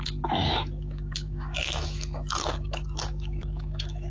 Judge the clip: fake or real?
fake